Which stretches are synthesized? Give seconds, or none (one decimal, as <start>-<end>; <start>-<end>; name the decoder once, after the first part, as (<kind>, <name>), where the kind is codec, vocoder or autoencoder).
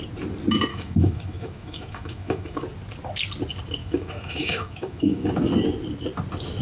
0.7-2.6 (autoencoder, DAC-VAE); 3.8-5.3